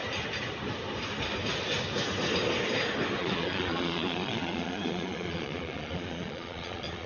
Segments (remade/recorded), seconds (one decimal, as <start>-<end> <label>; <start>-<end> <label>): 0.0-3.2 recorded; 3.2-7.1 remade